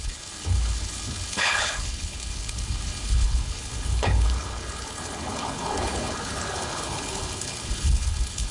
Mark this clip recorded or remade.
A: remade